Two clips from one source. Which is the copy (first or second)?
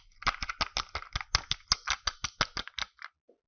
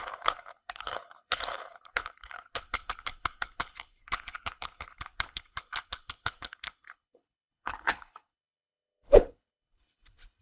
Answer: second